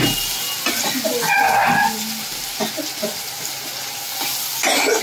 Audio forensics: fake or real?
real